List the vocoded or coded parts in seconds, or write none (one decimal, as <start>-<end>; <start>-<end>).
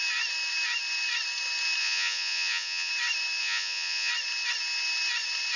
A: 1.8-2.9; 3.4-4.1